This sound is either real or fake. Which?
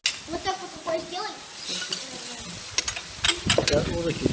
real